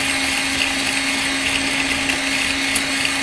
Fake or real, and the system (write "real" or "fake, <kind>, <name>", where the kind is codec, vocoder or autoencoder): real